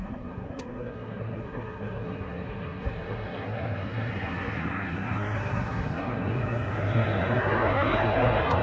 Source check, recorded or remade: remade